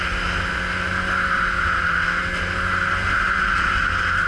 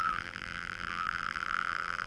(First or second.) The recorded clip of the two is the first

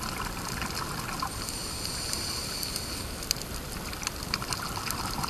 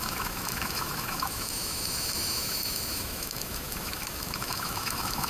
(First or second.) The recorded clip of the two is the first